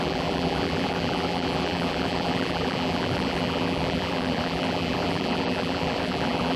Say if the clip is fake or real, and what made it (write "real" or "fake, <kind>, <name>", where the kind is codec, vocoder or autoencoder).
fake, vocoder, BigVGAN v2